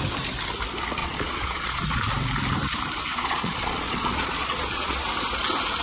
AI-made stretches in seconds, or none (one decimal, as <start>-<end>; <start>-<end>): 1.0-2.0; 3.1-5.0

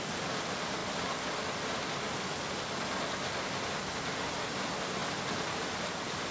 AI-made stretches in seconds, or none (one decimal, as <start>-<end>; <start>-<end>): none

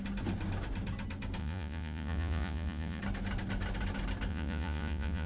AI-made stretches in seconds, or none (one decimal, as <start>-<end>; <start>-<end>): 1.4-3.0; 4.3-5.3

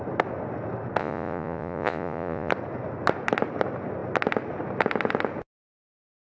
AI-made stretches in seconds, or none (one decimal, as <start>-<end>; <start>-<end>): 1.0-2.5

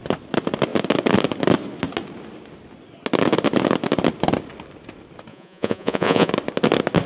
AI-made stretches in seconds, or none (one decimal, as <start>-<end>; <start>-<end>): 5.3-6.3

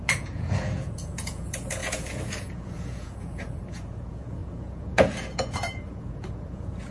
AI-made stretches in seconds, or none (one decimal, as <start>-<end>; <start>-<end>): 0.0-6.9

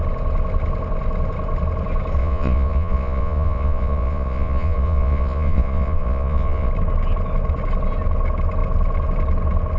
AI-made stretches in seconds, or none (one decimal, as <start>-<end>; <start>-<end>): 2.2-6.7

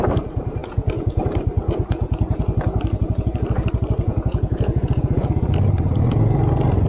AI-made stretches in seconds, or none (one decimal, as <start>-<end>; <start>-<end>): 0.6-1.2; 1.6-2.4; 4.1-5.3